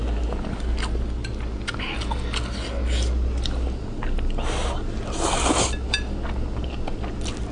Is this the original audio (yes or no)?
yes